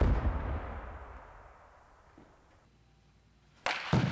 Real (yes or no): yes